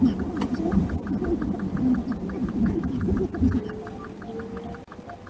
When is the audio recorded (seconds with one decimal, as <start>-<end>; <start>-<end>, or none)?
0.0-2.4; 3.1-5.3